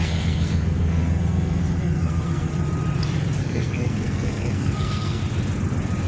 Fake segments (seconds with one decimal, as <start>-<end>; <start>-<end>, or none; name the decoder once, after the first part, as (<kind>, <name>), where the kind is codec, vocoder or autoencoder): 0.0-2.5 (codec, SNAC); 3.4-5.2